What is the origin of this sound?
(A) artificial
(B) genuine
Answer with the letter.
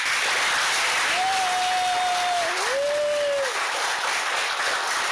B